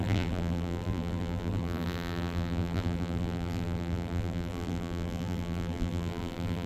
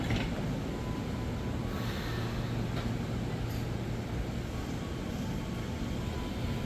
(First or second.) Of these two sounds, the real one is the second